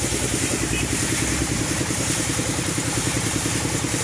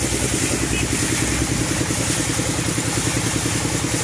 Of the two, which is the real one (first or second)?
second